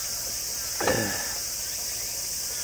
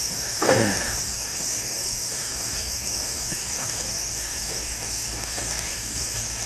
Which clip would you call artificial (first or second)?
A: second